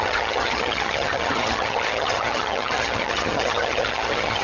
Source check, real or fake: fake